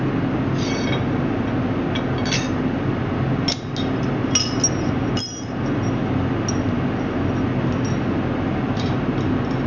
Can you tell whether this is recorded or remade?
recorded